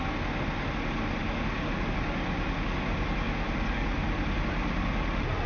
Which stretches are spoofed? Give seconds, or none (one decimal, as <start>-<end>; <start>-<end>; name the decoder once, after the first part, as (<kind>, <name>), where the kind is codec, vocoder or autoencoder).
none